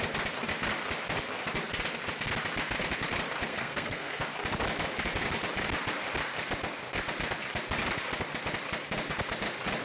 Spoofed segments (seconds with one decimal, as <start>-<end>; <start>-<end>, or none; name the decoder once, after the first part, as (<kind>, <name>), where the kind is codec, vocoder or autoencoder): 3.5-4.2 (codec, SNAC)